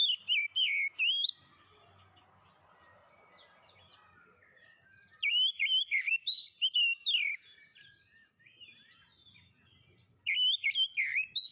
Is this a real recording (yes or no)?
yes